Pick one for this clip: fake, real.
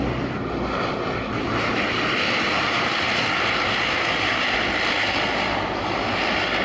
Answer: real